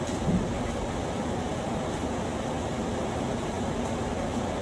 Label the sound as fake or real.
real